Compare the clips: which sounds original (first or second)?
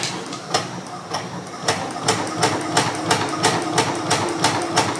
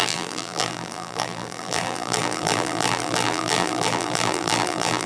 first